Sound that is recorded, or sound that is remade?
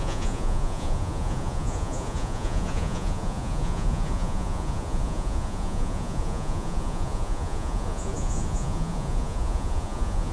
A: remade